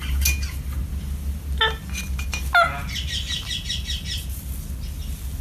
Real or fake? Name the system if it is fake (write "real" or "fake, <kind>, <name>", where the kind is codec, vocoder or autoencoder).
real